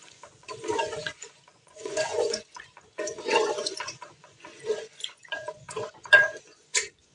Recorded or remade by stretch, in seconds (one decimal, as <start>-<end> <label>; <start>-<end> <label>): 0.0-7.1 remade